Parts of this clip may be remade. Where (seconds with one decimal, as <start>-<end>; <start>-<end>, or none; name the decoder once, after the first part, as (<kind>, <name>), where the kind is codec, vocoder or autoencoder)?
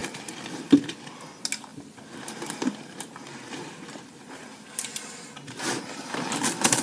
0.0-0.8 (vocoder, BigVGAN v2); 1.7-5.1